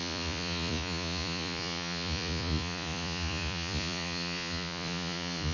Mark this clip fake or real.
fake